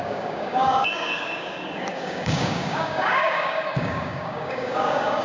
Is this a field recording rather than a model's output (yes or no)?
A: no